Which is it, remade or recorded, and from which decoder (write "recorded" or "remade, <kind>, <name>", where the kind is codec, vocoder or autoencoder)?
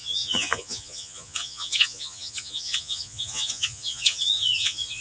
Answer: remade, vocoder, Vocos